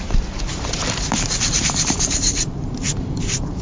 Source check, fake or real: fake